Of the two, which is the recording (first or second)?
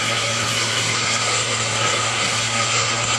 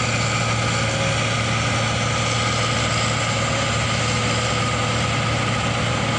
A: second